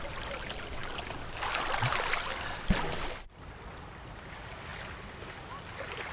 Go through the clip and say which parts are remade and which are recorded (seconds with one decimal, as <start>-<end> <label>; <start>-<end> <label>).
0.0-6.1 recorded